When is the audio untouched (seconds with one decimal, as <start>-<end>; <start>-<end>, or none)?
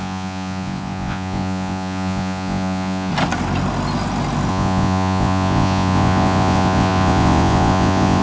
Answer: 3.1-4.5